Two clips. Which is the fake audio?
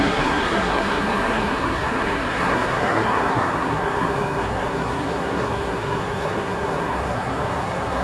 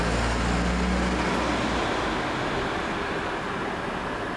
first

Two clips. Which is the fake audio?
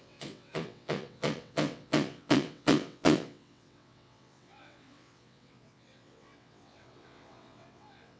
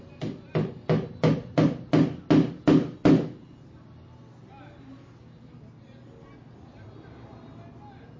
first